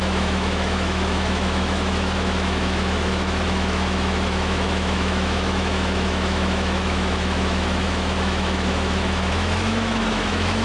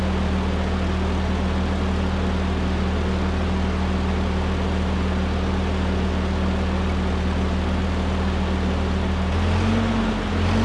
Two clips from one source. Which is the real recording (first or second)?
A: second